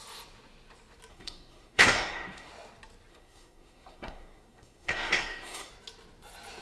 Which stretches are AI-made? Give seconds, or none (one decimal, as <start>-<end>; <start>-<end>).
1.1-2.5; 3.1-5.7